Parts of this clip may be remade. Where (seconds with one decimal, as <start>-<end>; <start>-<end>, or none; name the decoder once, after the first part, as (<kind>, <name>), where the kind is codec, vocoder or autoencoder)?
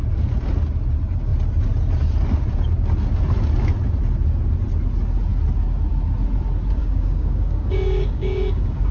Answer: 6.8-8.9 (codec, DAC)